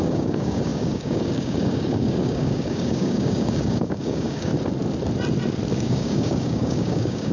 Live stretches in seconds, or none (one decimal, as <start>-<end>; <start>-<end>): 4.5-5.7